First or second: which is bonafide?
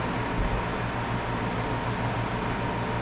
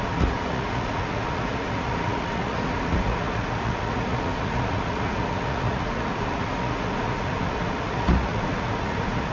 first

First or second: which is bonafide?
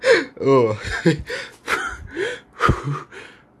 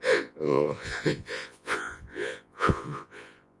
first